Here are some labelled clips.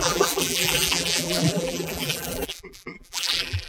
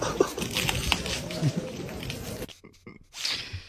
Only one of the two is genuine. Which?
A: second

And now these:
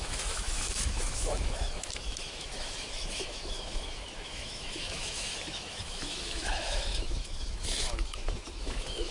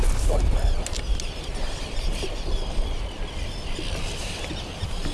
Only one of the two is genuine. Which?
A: second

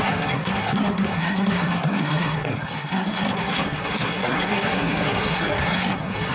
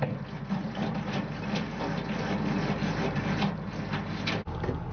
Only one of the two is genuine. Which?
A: second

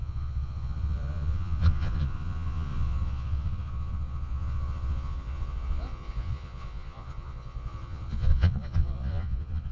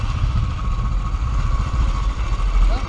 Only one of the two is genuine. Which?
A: second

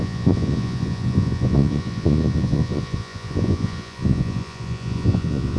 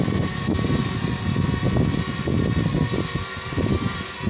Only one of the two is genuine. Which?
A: second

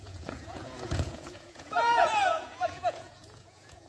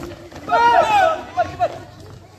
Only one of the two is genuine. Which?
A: second